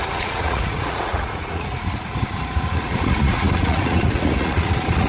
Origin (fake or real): fake